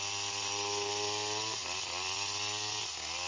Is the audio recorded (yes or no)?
yes